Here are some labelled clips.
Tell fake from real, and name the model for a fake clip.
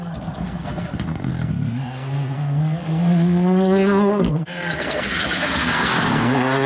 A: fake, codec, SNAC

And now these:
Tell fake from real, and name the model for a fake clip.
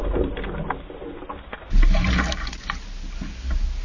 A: real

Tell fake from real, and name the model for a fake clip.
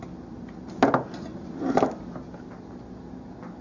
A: real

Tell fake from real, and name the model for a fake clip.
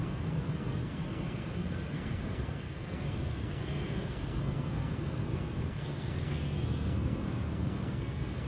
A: fake, codec, SNAC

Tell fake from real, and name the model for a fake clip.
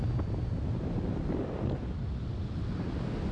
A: real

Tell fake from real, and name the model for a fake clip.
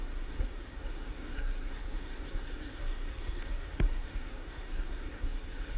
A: fake, codec, SNAC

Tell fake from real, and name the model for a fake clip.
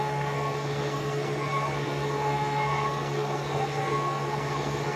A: fake, codec, SNAC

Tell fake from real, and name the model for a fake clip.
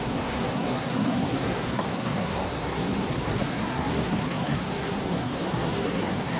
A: fake, codec, SNAC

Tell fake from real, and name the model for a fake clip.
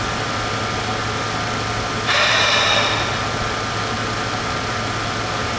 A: real